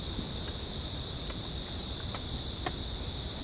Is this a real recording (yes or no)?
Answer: yes